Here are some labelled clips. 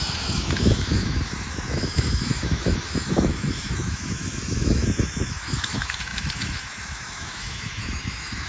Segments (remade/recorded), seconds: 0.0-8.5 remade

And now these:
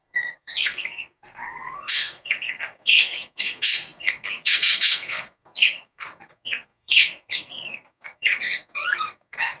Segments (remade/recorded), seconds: 0.0-9.6 remade

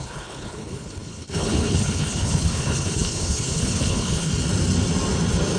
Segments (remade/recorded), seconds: 0.0-4.3 remade; 4.3-5.6 recorded

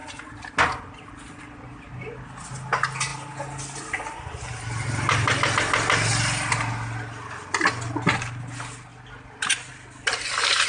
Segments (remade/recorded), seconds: 0.0-10.7 recorded

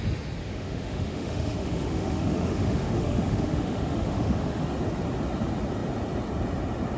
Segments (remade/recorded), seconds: 0.0-0.4 recorded; 0.4-4.6 remade; 4.6-7.0 recorded

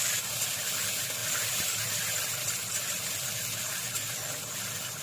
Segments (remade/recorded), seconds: 0.0-5.0 recorded

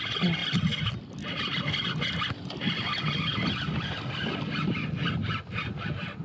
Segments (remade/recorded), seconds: 0.0-6.2 recorded